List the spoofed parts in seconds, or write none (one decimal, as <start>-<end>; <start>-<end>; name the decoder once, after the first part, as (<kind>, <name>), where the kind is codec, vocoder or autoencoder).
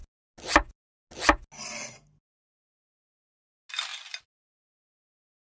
none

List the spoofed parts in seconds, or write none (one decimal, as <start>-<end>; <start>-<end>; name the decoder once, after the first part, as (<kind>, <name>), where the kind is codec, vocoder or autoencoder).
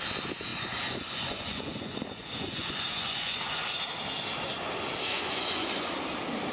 0.5-3.8 (vocoder, Vocos); 5.1-5.9